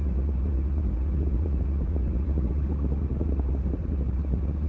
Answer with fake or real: fake